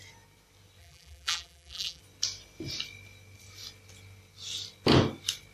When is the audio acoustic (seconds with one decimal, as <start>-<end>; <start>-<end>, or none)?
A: 0.0-0.8; 2.0-5.5